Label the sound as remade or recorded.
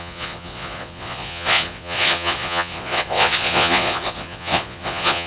remade